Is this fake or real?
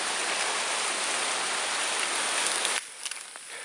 real